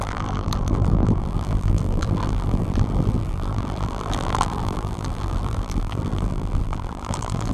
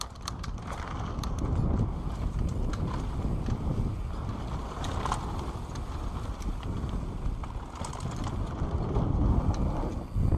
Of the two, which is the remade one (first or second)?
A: first